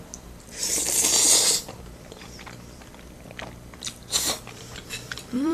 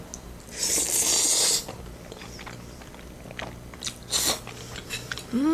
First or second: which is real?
second